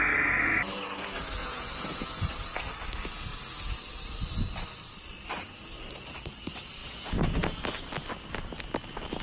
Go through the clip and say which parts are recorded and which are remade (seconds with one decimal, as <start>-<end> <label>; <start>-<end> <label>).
0.0-1.4 recorded; 1.4-2.3 remade; 2.3-6.8 recorded; 6.8-7.6 remade; 7.6-9.2 recorded